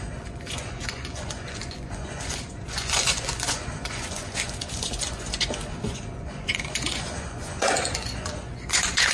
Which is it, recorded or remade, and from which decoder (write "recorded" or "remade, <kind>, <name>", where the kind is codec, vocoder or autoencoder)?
remade, vocoder, Vocos